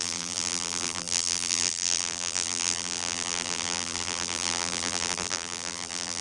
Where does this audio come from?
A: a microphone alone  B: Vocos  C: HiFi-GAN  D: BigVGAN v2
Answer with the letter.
D